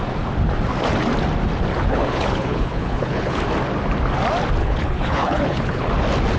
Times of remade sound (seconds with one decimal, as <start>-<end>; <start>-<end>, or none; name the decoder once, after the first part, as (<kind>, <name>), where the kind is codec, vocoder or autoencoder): 1.7-3.4 (codec, HILCodec); 4.6-5.9